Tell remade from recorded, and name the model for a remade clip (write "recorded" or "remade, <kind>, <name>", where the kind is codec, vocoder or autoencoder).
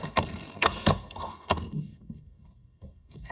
remade, codec, SNAC